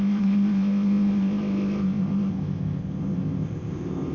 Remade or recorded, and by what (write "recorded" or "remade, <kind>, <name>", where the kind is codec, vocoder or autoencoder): remade, codec, ZipCodec